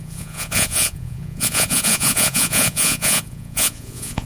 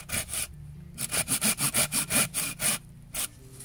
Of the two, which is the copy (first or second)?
first